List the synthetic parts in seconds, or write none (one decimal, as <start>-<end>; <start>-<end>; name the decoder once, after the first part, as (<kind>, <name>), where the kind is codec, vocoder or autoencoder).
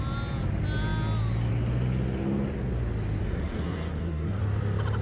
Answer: 3.2-4.4 (codec, SNAC)